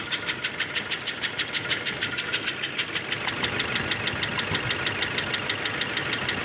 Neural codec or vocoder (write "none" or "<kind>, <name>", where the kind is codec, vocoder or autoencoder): none